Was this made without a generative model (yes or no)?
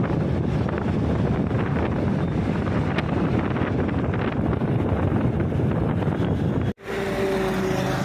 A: yes